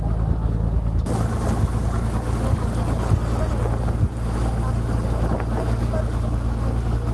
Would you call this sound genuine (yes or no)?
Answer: yes